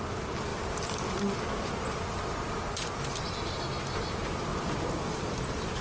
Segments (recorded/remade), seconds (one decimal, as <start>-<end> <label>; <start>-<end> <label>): 0.0-0.5 recorded; 0.5-3.6 remade; 3.6-4.5 recorded; 4.5-5.3 remade; 5.3-5.8 recorded

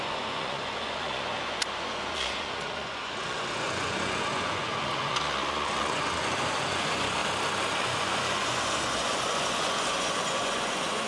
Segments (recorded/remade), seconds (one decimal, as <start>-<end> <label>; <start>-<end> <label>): 0.0-7.2 remade; 7.2-7.8 recorded; 7.8-11.1 remade

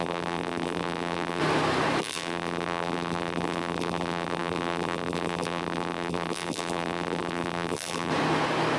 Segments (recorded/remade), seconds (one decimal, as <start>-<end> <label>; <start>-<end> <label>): 0.0-1.4 remade; 1.4-2.0 recorded; 2.0-8.1 remade; 8.1-8.8 recorded

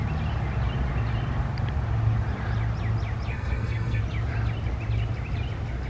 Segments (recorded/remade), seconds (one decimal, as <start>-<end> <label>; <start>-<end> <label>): 0.0-3.3 recorded; 3.3-4.0 remade; 4.0-5.9 recorded

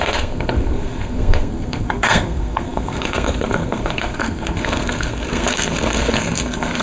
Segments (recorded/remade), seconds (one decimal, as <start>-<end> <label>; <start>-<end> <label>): 0.0-6.8 remade